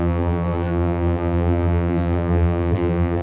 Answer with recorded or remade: remade